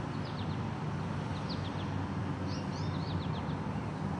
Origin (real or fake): real